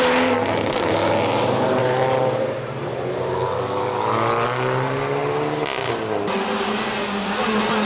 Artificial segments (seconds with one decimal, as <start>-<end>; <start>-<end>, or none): 1.8-2.9